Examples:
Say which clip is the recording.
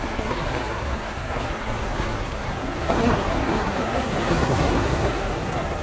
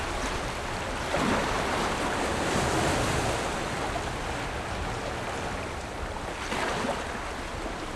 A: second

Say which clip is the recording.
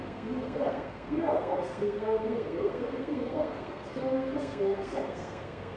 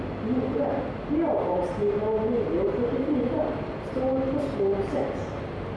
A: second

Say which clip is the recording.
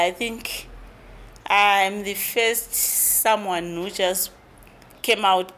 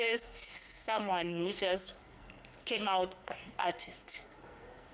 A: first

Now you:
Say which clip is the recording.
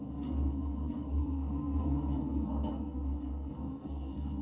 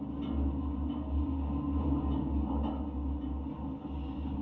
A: second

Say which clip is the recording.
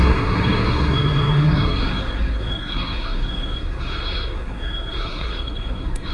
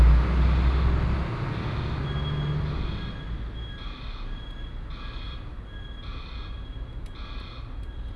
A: second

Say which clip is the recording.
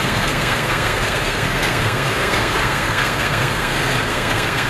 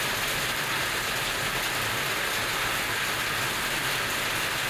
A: second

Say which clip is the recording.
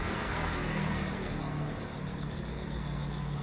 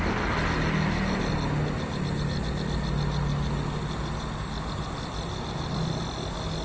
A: second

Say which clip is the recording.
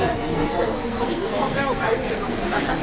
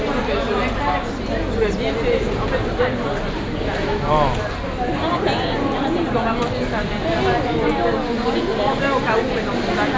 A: second